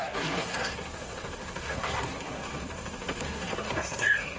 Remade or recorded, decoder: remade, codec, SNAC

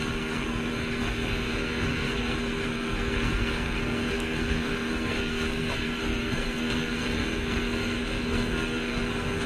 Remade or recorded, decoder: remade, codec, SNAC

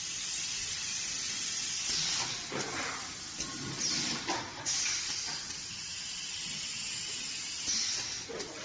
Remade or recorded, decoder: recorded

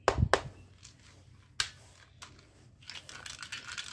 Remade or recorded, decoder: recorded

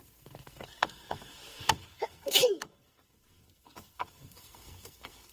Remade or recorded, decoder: remade, codec, SNAC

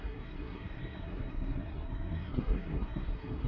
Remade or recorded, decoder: remade, codec, SNAC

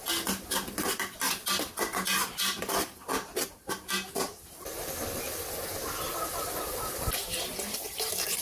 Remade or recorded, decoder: recorded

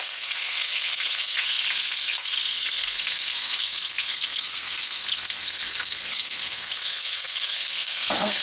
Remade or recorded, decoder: remade, codec, SNAC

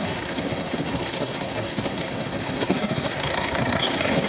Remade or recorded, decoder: remade, codec, SNAC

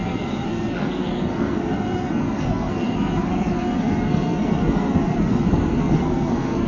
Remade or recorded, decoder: remade, codec, SNAC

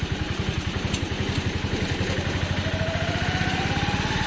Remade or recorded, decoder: recorded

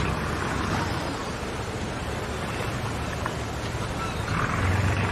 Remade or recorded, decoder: recorded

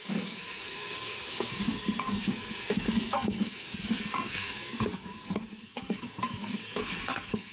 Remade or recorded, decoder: remade, codec, SNAC